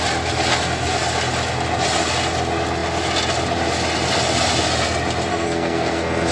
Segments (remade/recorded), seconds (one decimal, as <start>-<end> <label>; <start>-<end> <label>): 0.0-5.3 recorded; 5.3-6.3 remade

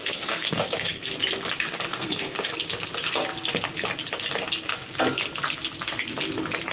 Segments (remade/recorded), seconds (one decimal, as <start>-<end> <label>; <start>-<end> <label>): 0.0-1.1 remade; 1.1-1.9 recorded; 1.9-2.5 remade; 2.5-6.7 recorded

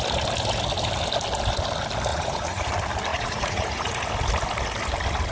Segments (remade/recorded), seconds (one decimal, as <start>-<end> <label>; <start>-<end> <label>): 0.0-2.1 recorded; 2.1-2.7 remade; 2.7-3.1 recorded; 3.1-4.1 remade; 4.1-5.3 recorded

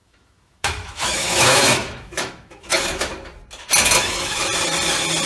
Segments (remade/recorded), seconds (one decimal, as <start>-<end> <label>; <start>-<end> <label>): 0.0-3.1 remade; 3.1-4.0 recorded; 4.0-4.4 remade; 4.4-5.3 recorded

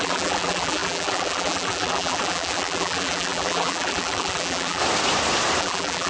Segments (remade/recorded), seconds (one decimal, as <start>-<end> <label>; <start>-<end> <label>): 0.0-4.8 remade; 4.8-5.6 recorded; 5.6-6.1 remade

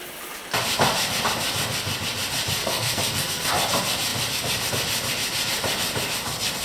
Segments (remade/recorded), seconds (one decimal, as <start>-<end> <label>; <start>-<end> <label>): 0.0-2.6 recorded; 2.6-3.5 remade; 3.5-6.6 recorded

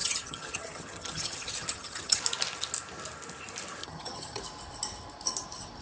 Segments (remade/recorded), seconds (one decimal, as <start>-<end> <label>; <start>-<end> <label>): 0.0-2.2 remade; 2.2-3.8 recorded; 3.8-4.4 remade; 4.4-5.8 recorded

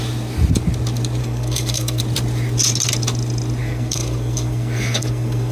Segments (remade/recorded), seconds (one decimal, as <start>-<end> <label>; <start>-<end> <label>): 0.0-1.2 recorded; 1.2-2.0 remade; 2.0-3.6 recorded; 3.6-5.5 remade